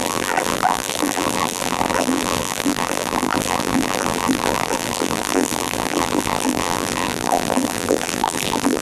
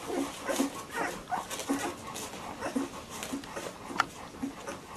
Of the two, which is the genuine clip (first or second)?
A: second